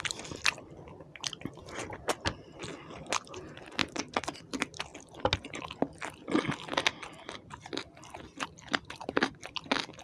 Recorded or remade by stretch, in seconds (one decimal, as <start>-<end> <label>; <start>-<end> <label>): 0.0-10.0 recorded

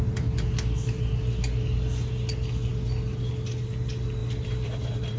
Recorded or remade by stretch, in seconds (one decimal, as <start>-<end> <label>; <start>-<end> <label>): 0.0-4.2 recorded; 4.2-5.2 remade

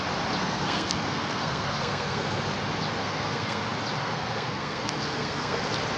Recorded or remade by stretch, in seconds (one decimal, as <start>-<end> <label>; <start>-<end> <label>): 0.0-0.4 recorded; 0.4-2.4 remade; 2.4-3.0 recorded; 3.0-3.6 remade; 3.6-4.0 recorded; 4.0-5.6 remade; 5.6-6.0 recorded

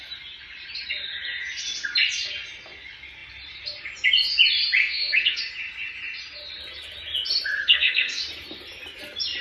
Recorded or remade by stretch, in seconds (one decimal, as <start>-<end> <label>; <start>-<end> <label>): 0.0-4.8 recorded; 4.8-5.4 remade; 5.4-7.6 recorded; 7.6-8.2 remade; 8.2-9.4 recorded

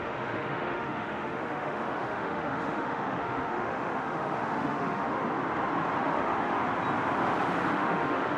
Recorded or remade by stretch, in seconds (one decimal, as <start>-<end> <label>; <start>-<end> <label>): 0.0-5.2 remade; 5.2-6.0 recorded; 6.0-6.6 remade; 6.6-7.7 recorded; 7.7-8.4 remade

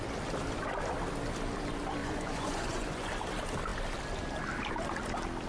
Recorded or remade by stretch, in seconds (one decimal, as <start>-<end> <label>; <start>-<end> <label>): 0.0-2.0 recorded; 2.0-3.1 remade; 3.1-5.5 recorded

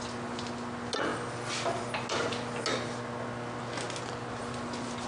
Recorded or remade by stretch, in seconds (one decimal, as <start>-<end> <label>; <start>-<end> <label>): 0.0-5.1 recorded